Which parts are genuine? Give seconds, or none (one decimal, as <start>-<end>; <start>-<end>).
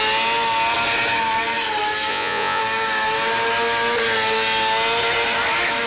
0.0-2.1; 2.6-5.9